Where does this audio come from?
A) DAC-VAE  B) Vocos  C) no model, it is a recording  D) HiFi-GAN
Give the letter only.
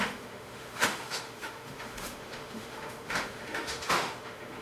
A